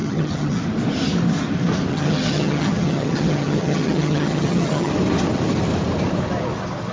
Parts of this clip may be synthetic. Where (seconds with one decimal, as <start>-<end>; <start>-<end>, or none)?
0.0-0.6; 1.9-4.9